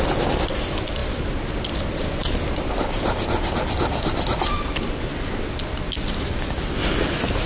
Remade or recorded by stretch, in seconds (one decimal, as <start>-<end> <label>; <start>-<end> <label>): 0.0-7.5 recorded